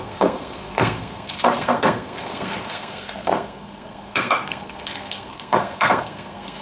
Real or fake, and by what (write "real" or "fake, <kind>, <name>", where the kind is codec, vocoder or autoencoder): fake, codec, SNAC